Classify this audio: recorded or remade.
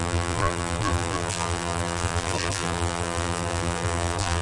remade